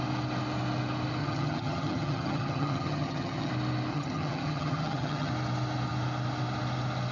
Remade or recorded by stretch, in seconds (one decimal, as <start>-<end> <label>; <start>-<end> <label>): 0.0-1.2 recorded; 1.2-3.5 remade; 3.5-3.9 recorded; 3.9-5.3 remade; 5.3-7.1 recorded